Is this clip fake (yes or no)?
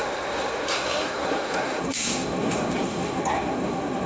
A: yes